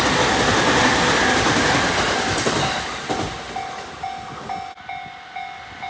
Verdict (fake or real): real